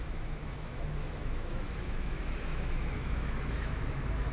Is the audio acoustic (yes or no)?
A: no